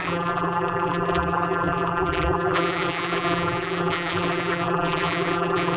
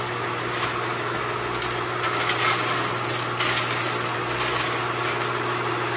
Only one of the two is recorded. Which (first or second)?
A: second